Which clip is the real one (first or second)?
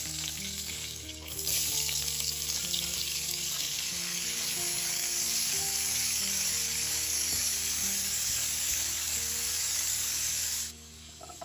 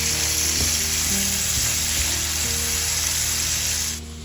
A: second